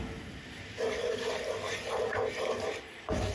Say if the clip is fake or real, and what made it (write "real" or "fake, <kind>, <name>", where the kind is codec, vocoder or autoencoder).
real